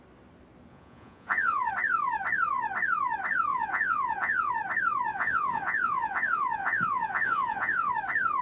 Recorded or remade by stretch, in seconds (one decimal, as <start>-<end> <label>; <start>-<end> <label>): 0.0-0.7 recorded; 0.7-1.7 remade; 1.7-3.5 recorded; 3.5-4.5 remade; 4.5-5.1 recorded; 5.1-7.9 remade; 7.9-8.4 recorded